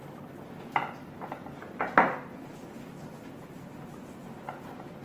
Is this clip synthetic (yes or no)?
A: no